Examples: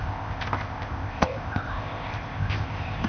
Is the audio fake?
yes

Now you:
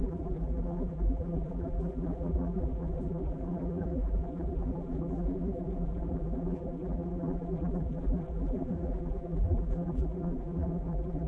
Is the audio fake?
yes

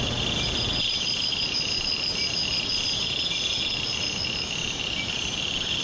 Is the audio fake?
no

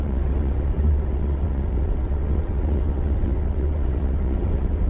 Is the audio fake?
yes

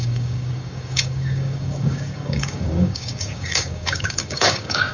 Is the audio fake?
yes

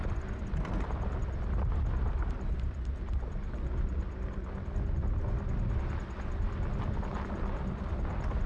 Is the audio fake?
no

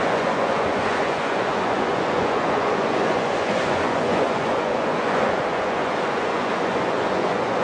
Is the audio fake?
yes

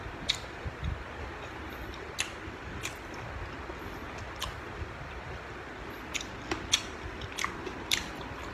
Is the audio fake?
no